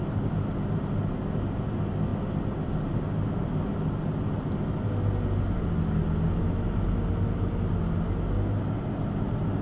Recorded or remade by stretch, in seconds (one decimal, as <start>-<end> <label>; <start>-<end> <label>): 0.0-9.6 recorded